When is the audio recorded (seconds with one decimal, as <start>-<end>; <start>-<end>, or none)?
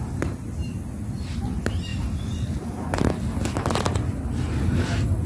0.0-5.3